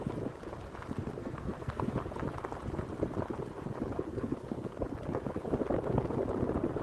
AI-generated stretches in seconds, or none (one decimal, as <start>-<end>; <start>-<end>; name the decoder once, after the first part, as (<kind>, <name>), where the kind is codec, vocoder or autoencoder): 1.2-1.9 (codec, SNAC); 4.1-4.7